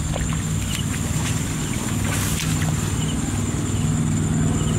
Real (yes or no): yes